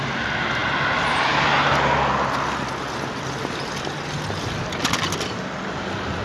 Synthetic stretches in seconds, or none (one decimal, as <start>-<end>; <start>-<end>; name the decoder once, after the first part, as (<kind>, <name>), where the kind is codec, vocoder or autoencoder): none